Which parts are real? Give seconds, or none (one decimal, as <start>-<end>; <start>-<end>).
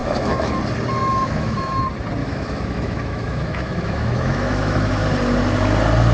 0.6-1.0; 1.8-2.2; 4.9-6.1